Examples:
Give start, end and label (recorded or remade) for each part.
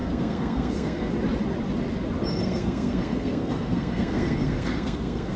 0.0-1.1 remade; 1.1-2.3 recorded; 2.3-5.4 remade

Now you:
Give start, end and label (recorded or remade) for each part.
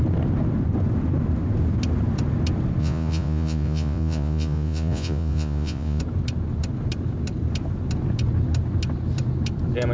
0.0-2.8 recorded; 2.8-6.0 remade; 6.0-9.9 recorded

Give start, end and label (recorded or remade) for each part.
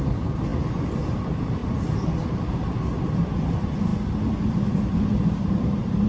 0.0-1.6 remade; 1.6-2.3 recorded; 2.3-3.9 remade; 3.9-4.7 recorded; 4.7-6.1 remade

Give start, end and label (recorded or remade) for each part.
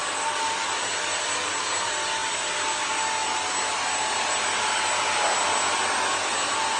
0.0-6.8 recorded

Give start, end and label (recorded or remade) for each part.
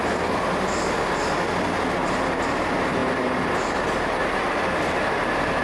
0.0-5.6 recorded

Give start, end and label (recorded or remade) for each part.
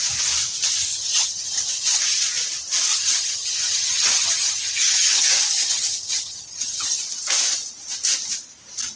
0.0-0.9 recorded; 0.9-2.0 remade; 2.0-2.9 recorded; 2.9-7.0 remade; 7.0-8.9 recorded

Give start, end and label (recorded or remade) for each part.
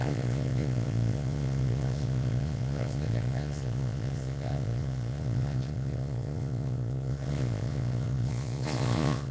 0.0-9.3 remade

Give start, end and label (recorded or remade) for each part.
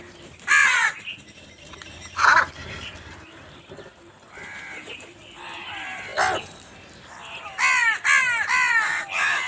0.0-0.6 recorded; 0.6-3.6 remade; 3.6-9.5 recorded